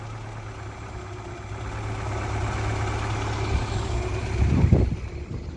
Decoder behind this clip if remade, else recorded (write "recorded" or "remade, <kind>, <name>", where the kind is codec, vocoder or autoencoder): recorded